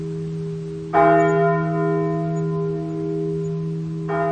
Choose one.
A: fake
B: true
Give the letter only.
B